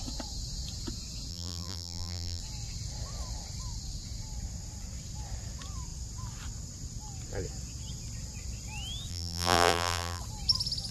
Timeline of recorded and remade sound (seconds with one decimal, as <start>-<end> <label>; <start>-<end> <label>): 0.0-1.3 recorded; 1.3-2.4 remade; 2.4-9.1 recorded; 9.1-10.2 remade; 10.2-10.9 recorded